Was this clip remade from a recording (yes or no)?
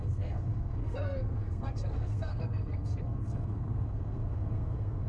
yes